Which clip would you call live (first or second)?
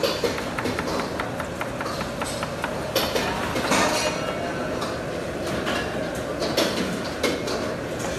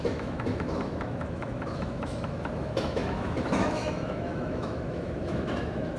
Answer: first